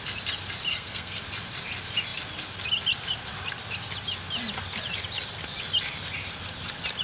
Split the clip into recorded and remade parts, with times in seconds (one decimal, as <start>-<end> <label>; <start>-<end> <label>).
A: 0.0-0.7 recorded; 0.7-1.2 remade; 1.2-7.0 recorded